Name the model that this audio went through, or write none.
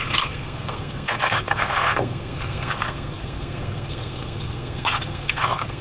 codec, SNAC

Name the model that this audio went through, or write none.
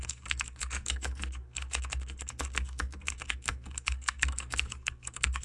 codec, SNAC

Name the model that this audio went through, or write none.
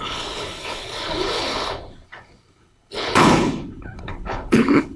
codec, HILCodec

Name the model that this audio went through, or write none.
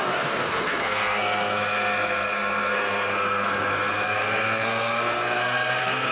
codec, SNAC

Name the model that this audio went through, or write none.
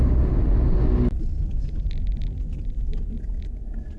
none